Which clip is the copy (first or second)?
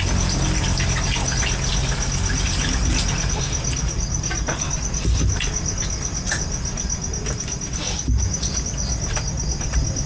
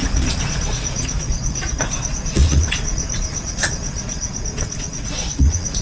second